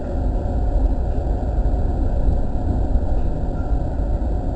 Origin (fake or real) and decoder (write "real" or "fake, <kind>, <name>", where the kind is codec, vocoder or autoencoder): real